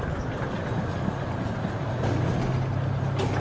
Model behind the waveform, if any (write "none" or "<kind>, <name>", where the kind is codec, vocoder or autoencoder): none